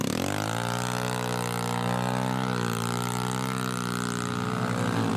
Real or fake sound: real